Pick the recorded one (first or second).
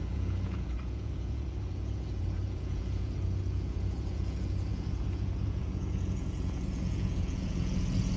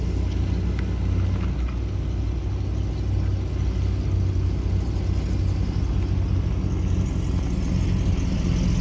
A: second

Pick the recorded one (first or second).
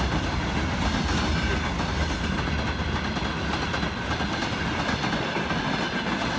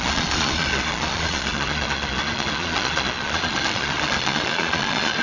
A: first